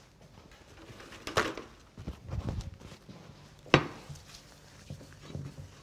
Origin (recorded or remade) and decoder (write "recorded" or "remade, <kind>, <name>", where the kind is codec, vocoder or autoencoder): recorded